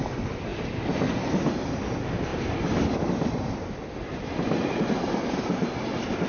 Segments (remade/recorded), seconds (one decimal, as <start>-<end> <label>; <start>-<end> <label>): 0.0-2.3 recorded; 2.3-4.9 remade; 4.9-6.3 recorded